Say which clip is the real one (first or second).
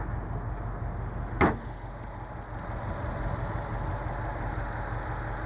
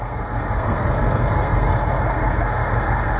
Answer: first